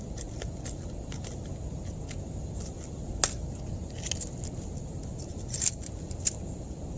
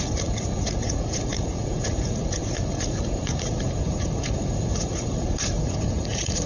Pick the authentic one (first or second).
first